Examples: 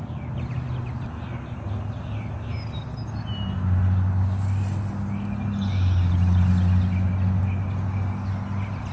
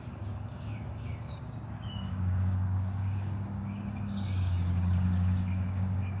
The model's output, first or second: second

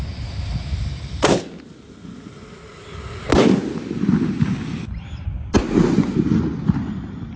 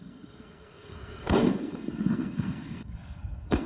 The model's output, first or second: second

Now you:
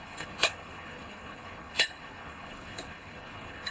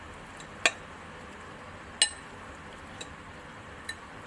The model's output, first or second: first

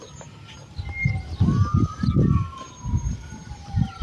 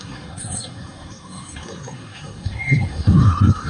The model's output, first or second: second